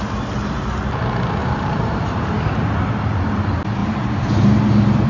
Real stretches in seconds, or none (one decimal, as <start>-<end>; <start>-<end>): 0.0-1.4; 2.3-3.8; 4.5-5.1